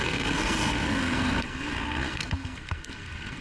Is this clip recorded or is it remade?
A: remade